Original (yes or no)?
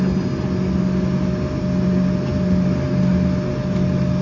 yes